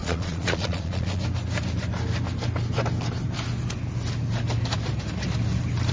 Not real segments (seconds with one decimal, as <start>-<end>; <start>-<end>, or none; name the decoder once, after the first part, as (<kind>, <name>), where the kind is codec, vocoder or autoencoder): 0.0-1.2 (vocoder, Vocos)